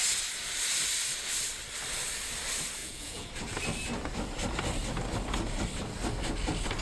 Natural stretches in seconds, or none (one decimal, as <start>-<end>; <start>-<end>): 0.0-2.8; 3.3-6.8